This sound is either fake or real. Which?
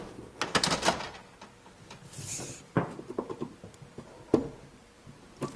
real